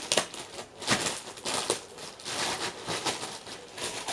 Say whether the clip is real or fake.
real